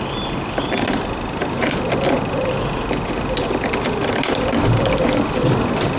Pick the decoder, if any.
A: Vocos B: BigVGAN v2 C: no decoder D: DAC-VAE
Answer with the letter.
C